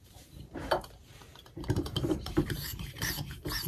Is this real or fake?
fake